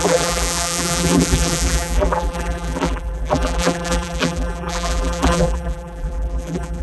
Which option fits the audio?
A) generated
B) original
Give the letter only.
A